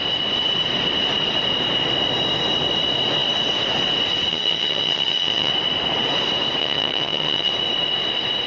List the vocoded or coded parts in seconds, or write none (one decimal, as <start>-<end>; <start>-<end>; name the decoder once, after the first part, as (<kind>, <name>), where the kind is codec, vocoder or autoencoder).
4.3-5.5 (vocoder, HiFi-GAN); 6.6-7.5